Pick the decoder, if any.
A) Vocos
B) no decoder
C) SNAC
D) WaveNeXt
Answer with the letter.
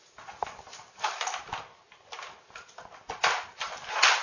B